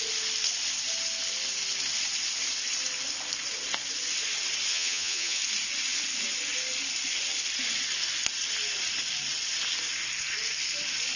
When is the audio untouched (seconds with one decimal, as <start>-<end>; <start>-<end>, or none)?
0.0-4.7; 5.4-11.2